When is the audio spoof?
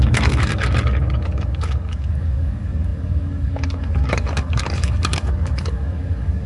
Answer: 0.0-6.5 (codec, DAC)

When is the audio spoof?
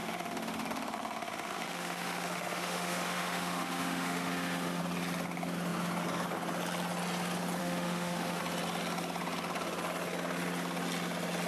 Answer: 0.0-4.8 (autoencoder, DAC-VAE); 7.6-8.4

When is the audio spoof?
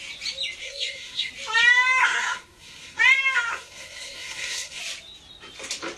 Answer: 0.6-1.3 (codec, SNAC); 2.0-3.0; 3.5-4.8